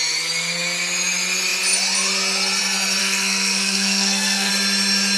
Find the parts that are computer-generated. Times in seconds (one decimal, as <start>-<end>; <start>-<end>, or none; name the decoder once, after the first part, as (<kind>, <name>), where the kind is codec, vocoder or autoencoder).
3.0-4.5 (codec, SNAC)